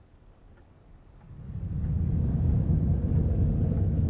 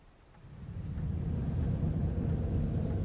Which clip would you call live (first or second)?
second